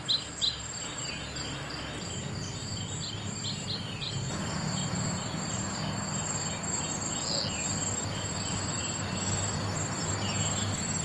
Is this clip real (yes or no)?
yes